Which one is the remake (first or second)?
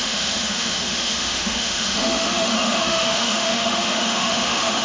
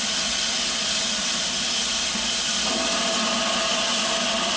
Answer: first